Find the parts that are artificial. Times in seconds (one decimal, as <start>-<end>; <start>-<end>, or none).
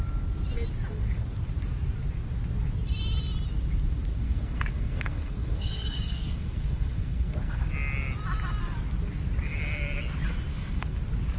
4.1-7.7; 10.5-11.0